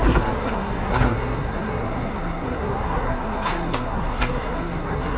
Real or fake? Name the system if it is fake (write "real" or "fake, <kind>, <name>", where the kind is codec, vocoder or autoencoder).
fake, codec, SNAC